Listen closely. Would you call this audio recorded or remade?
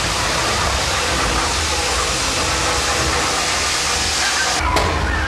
recorded